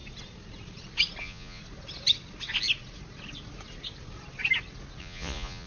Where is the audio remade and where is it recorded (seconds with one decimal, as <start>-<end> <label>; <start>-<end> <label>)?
0.0-1.2 recorded; 1.2-1.6 remade; 1.6-5.0 recorded; 5.0-5.7 remade

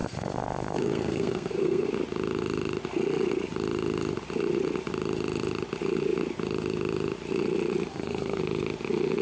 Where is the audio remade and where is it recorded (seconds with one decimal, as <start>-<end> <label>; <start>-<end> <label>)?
0.0-1.9 remade; 1.9-7.9 recorded; 7.9-8.4 remade; 8.4-9.2 recorded

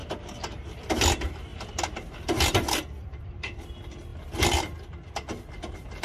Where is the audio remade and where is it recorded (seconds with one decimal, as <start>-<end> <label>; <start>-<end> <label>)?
0.0-6.0 recorded

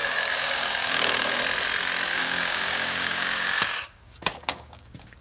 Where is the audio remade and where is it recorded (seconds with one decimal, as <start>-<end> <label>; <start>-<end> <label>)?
0.0-1.4 remade; 1.4-2.1 recorded; 2.1-5.2 remade

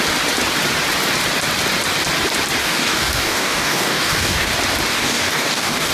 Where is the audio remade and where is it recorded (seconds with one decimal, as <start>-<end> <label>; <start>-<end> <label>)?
0.0-2.6 recorded; 2.6-4.5 remade; 4.5-4.9 recorded; 4.9-5.9 remade

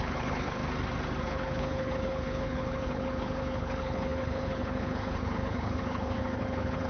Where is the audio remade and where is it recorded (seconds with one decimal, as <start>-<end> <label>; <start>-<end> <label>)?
0.0-0.6 remade; 0.6-1.2 recorded; 1.2-6.9 remade

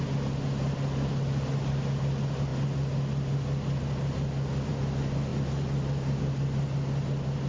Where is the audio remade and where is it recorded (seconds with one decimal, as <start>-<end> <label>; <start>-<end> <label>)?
0.0-7.5 recorded

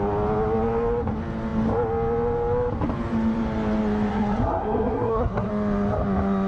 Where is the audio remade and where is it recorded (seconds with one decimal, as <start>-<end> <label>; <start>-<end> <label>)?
0.0-4.1 recorded; 4.1-5.5 remade; 5.5-6.5 recorded